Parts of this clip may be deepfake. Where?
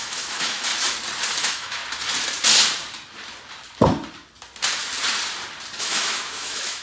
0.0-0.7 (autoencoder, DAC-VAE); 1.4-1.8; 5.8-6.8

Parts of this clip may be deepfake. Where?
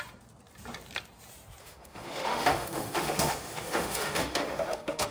1.6-5.1 (autoencoder, DAC-VAE)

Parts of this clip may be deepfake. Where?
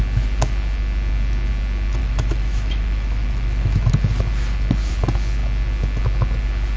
2.0-3.9 (autoencoder, DAC-VAE)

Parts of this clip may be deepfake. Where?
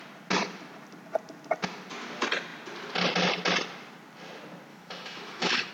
4.7-5.7 (autoencoder, DAC-VAE)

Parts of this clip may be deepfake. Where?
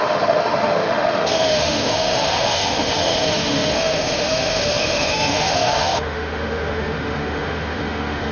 0.0-8.3 (autoencoder, DAC-VAE)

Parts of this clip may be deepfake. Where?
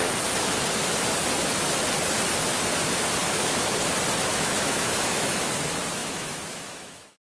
3.2-3.8 (autoencoder, DAC-VAE); 4.3-5.5; 6.0-7.4